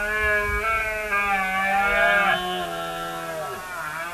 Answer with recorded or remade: recorded